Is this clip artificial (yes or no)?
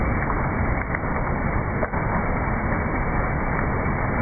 no